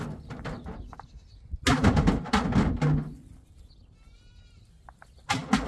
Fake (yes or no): no